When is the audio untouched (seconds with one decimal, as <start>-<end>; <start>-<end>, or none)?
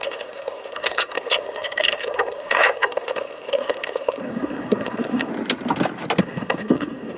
5.3-6.2